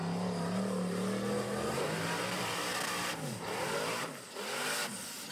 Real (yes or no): yes